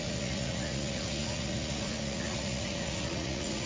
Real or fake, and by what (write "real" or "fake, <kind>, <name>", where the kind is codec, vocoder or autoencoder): fake, vocoder, Vocos